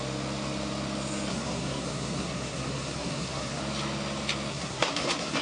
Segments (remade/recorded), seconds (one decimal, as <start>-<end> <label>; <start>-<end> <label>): 0.0-1.3 recorded; 1.3-3.6 remade; 3.6-4.5 recorded; 4.5-5.4 remade

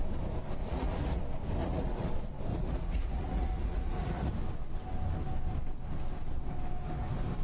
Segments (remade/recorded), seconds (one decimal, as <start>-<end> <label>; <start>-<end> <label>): 0.0-0.6 recorded; 0.6-1.2 remade; 1.2-1.6 recorded; 1.6-2.1 remade; 2.1-2.5 recorded; 2.5-4.3 remade; 4.3-7.4 recorded

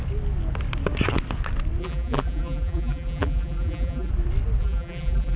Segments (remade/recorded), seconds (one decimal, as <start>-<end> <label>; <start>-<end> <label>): 0.0-1.8 recorded; 1.8-4.1 remade; 4.1-4.6 recorded; 4.6-5.4 remade